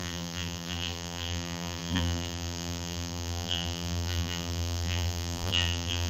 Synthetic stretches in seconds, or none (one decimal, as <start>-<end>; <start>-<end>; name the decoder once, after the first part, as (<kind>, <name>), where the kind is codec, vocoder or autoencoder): 0.0-6.1 (vocoder, BigVGAN v2)